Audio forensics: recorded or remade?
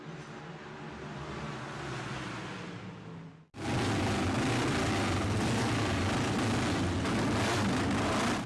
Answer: recorded